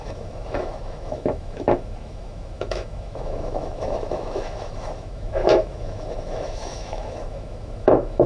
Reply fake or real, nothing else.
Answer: fake